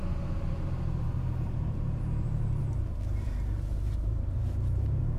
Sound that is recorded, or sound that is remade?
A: remade